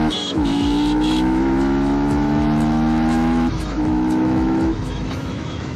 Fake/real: fake